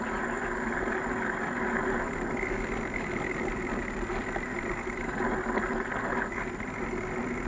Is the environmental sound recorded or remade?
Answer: recorded